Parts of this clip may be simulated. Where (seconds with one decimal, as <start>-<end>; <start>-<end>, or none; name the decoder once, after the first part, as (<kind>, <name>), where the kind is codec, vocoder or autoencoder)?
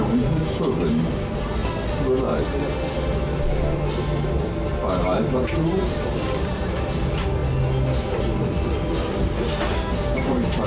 0.0-1.6 (vocoder, BigVGAN v2); 5.0-7.4